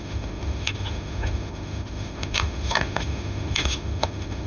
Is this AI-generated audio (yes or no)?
yes